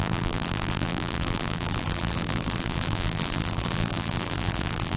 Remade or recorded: remade